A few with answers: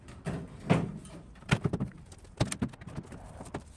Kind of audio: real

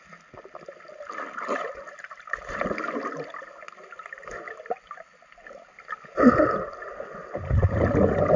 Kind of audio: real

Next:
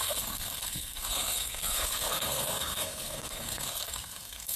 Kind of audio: fake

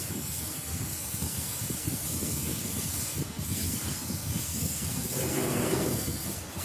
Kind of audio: fake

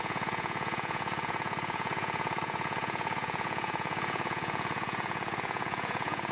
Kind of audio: fake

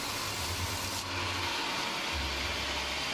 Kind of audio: real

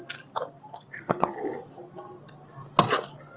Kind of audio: real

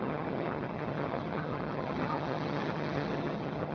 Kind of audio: fake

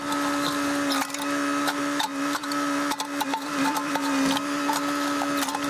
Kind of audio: real